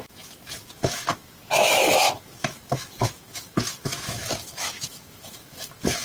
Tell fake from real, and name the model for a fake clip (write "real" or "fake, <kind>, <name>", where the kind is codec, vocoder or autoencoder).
fake, autoencoder, DAC-VAE